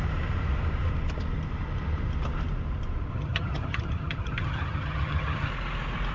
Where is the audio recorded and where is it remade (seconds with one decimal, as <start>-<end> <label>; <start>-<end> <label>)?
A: 0.0-3.1 recorded; 3.1-5.5 remade; 5.5-6.1 recorded